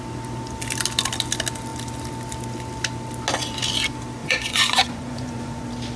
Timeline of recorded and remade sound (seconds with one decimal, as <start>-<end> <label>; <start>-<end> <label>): 0.0-4.2 recorded; 4.2-5.6 remade; 5.6-6.0 recorded